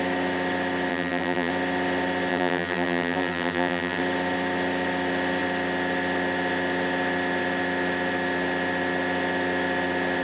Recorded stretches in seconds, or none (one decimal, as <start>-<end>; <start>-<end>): 0.0-0.9; 1.5-2.3; 4.0-10.2